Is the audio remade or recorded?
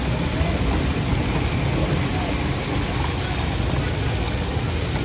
recorded